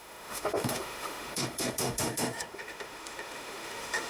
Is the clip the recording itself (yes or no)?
no